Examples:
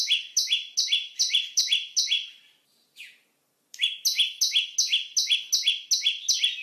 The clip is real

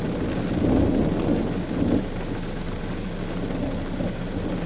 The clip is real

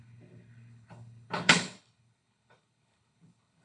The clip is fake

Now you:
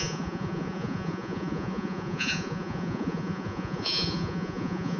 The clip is fake